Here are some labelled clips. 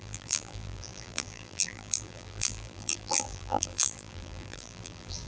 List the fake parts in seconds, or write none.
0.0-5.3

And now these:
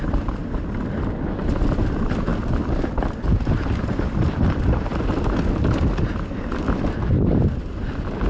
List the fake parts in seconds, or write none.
0.0-0.4; 1.9-2.3; 4.4-8.3

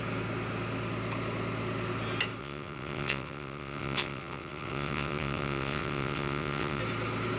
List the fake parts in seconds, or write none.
2.4-6.8

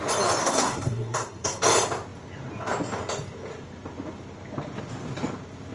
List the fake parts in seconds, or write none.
0.4-1.6

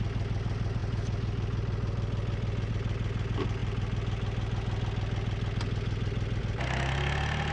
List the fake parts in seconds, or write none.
none

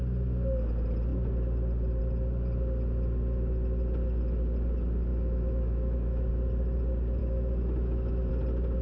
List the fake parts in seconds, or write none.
5.1-6.3; 7.2-8.3

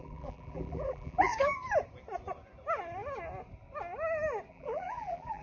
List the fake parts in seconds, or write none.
0.0-1.3; 4.5-5.4